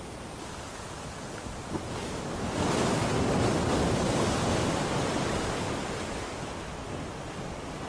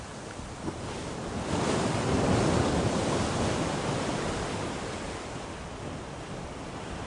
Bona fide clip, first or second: first